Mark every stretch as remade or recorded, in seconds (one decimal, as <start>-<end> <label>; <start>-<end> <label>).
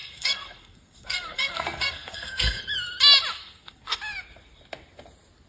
0.0-2.6 remade; 2.6-3.3 recorded; 3.3-4.0 remade; 4.0-5.5 recorded